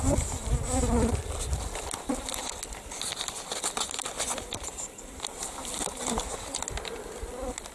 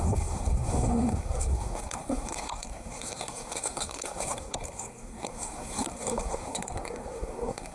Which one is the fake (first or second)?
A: second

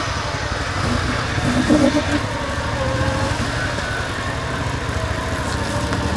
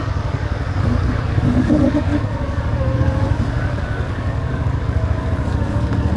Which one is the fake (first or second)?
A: second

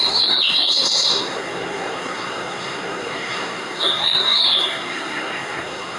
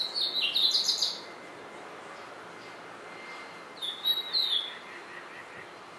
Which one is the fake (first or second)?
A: first